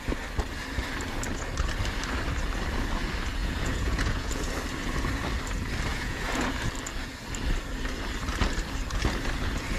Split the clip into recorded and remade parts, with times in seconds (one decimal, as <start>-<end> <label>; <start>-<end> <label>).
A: 0.0-3.4 recorded; 3.4-4.5 remade; 4.5-5.9 recorded; 5.9-6.5 remade; 6.5-9.8 recorded